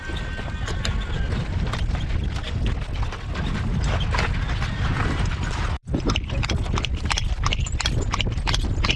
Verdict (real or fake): real